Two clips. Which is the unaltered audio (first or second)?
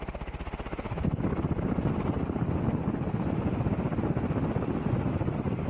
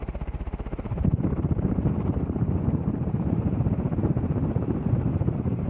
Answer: first